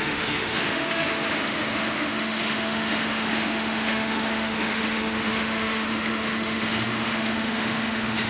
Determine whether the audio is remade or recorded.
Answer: remade